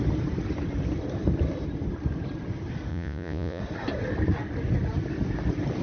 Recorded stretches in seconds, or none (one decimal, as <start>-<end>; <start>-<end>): 0.0-2.9; 3.6-5.8